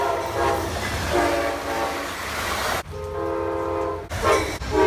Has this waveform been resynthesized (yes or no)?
no